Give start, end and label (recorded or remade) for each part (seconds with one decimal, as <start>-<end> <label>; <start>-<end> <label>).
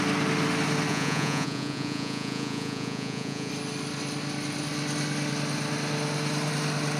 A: 0.0-0.9 recorded; 0.9-3.5 remade; 3.5-7.0 recorded